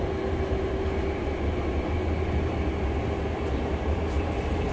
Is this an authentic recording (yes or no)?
yes